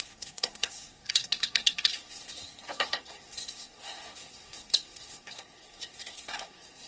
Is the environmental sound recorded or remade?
remade